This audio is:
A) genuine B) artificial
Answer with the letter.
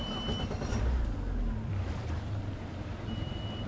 A